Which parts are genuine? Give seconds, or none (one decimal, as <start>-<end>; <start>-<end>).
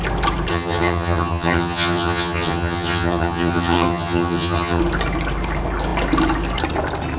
0.0-0.5; 4.8-7.2